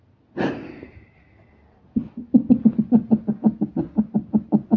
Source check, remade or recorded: recorded